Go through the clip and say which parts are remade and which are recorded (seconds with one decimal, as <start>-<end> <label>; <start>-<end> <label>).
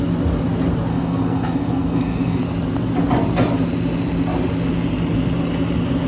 0.0-0.9 recorded; 0.9-2.4 remade; 2.4-6.1 recorded